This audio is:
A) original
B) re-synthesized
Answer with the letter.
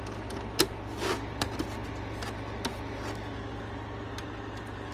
A